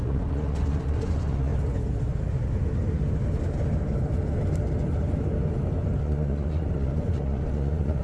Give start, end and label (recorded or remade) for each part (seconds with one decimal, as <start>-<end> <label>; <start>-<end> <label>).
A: 0.0-1.5 remade; 1.5-6.0 recorded; 6.0-8.0 remade